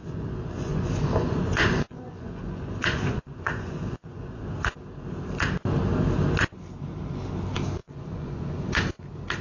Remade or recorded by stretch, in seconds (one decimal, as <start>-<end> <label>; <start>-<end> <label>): 0.0-4.7 remade; 4.7-7.8 recorded; 7.8-8.8 remade; 8.8-9.4 recorded